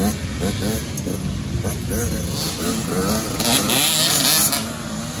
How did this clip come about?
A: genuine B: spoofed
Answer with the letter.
A